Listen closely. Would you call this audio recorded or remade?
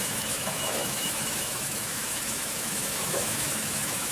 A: remade